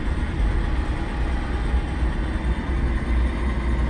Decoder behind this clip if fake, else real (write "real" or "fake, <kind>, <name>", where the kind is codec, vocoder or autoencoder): real